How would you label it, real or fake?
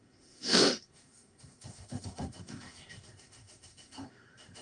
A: fake